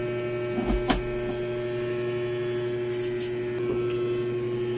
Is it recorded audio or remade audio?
recorded